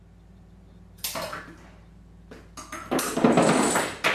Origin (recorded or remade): recorded